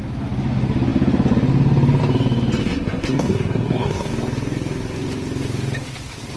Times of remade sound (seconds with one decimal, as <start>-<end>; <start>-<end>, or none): 2.6-4.1